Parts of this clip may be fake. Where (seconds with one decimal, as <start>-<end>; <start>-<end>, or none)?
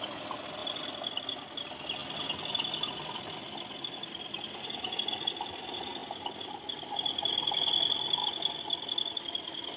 0.6-1.2; 6.0-6.9; 8.2-9.8